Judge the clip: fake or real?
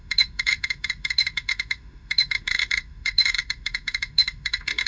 fake